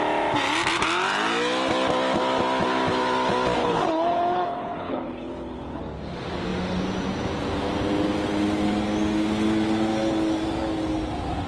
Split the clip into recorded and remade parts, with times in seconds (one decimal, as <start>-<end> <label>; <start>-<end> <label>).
0.0-3.6 recorded; 3.6-5.8 remade; 5.8-11.5 recorded